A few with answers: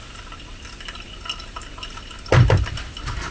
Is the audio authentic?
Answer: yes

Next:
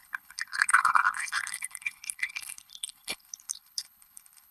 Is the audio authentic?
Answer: no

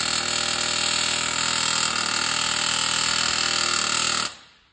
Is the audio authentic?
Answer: yes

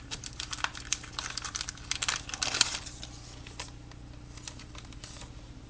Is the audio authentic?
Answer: no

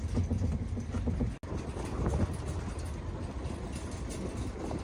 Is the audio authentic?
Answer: yes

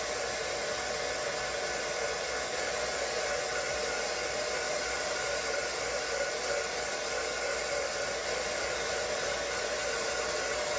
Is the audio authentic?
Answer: yes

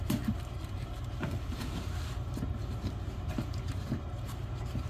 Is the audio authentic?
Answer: no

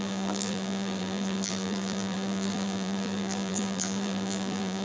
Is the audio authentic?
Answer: no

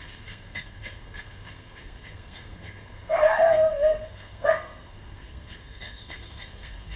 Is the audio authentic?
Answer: no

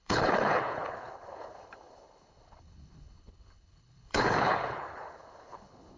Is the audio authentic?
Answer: no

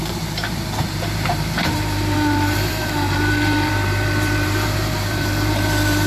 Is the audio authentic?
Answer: no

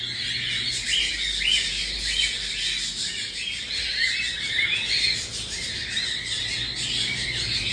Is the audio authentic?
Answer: yes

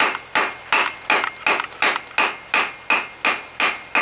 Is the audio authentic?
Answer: yes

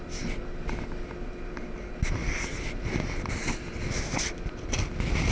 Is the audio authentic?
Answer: yes